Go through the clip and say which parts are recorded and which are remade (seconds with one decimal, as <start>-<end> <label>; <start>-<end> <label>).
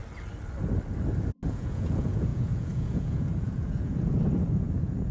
0.0-1.5 recorded; 1.5-5.1 remade